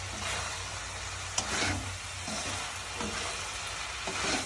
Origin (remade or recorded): recorded